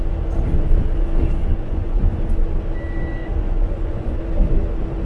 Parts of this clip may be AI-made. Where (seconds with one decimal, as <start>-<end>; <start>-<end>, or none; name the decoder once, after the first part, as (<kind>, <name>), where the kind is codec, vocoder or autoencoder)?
1.4-2.2 (vocoder, Vocos); 3.2-4.2